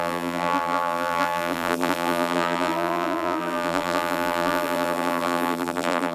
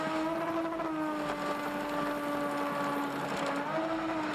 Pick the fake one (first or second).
first